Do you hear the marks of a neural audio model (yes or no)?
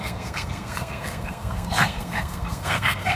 yes